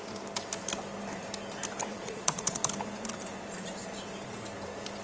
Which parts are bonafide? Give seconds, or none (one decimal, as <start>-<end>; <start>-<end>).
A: 0.0-1.9; 2.6-5.0